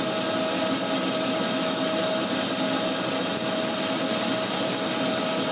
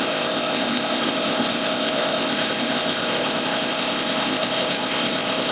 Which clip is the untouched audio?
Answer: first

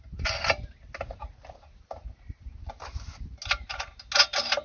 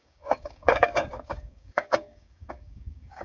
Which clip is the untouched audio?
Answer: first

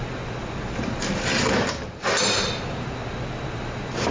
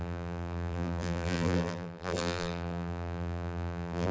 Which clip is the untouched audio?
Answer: first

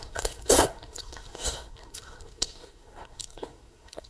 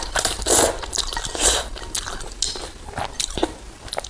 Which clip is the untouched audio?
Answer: second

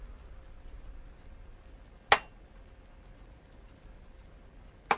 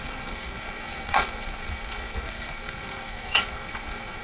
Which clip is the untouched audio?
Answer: first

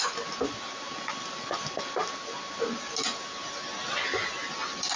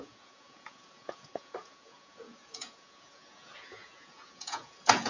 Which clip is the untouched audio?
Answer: first